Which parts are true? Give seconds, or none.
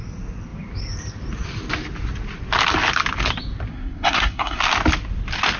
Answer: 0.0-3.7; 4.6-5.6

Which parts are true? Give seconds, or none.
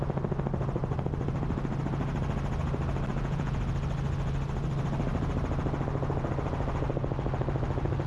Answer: 0.0-3.1; 3.6-8.1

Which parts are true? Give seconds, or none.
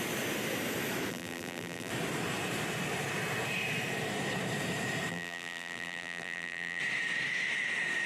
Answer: 0.0-1.1; 1.9-5.1; 6.8-8.1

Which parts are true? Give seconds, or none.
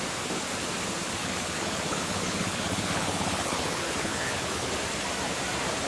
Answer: 0.0-1.2; 4.7-5.9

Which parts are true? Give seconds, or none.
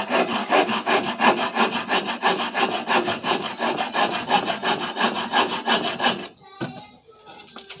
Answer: 0.0-0.4; 1.1-7.8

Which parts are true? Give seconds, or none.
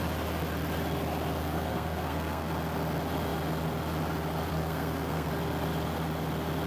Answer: 0.0-1.4; 2.5-4.5; 5.3-6.7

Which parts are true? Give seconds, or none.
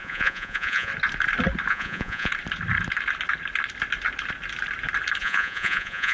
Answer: 0.9-1.7; 2.3-5.2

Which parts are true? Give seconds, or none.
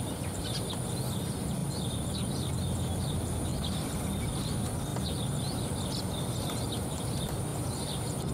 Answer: 0.0-1.6; 2.5-3.5; 4.0-8.3